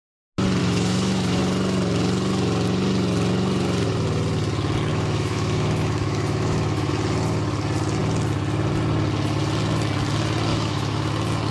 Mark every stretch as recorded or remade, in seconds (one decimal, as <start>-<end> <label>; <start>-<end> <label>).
0.0-0.6 recorded; 0.6-1.4 remade; 1.4-4.9 recorded; 4.9-6.9 remade; 6.9-10.5 recorded; 10.5-11.1 remade; 11.1-11.5 recorded